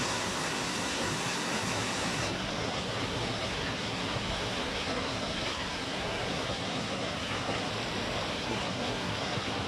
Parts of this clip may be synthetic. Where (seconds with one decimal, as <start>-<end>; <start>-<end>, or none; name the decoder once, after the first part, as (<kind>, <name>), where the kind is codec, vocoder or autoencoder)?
0.0-7.7 (codec, SNAC); 8.3-9.7